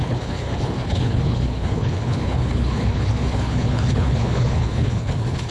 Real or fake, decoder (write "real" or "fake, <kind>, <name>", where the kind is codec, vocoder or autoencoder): fake, codec, HILCodec